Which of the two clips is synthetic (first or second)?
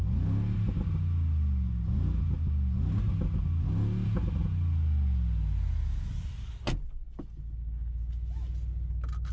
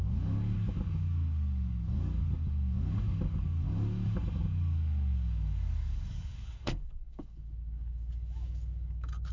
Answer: second